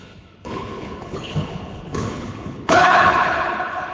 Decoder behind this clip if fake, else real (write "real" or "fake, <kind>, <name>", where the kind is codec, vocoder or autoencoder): fake, codec, HILCodec